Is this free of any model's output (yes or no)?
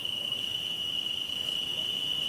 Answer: no